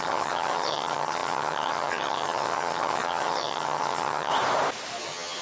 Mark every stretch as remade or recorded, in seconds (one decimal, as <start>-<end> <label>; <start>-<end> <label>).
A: 0.0-4.3 remade; 4.3-5.0 recorded; 5.0-5.4 remade